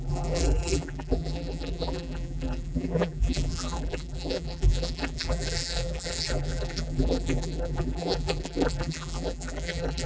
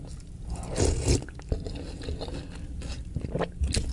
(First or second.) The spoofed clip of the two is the first